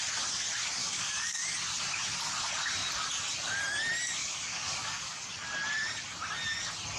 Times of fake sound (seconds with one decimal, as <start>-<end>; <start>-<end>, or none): 0.8-1.5; 4.2-5.3